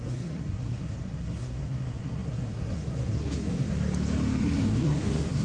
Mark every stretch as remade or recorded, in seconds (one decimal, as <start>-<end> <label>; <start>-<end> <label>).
0.0-3.7 remade; 3.7-4.4 recorded; 4.4-5.4 remade